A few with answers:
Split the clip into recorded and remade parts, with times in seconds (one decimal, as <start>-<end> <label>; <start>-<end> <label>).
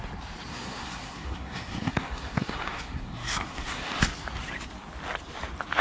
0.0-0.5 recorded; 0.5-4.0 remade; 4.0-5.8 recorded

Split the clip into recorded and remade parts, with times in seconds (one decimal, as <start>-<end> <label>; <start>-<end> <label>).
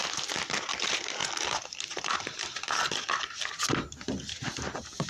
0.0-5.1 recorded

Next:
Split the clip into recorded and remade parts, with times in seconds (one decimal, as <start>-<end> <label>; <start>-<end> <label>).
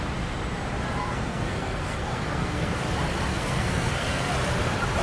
0.0-1.0 recorded; 1.0-2.8 remade; 2.8-3.3 recorded; 3.3-4.3 remade; 4.3-5.0 recorded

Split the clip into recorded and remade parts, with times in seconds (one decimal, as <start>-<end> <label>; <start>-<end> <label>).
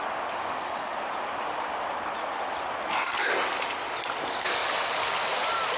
0.0-5.8 recorded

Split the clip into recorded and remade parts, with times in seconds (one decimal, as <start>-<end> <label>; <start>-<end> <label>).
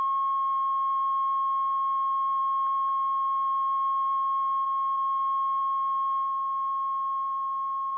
0.0-8.0 recorded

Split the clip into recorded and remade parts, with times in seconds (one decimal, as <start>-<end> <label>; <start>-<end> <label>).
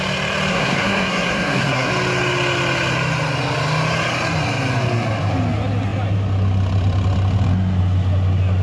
0.0-0.5 recorded; 0.5-1.9 remade; 1.9-8.6 recorded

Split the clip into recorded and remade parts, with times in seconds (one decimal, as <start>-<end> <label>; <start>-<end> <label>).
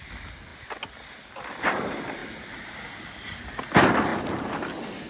0.0-5.1 recorded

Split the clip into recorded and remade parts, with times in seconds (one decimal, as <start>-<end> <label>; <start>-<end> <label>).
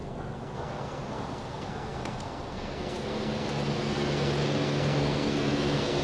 0.0-6.0 remade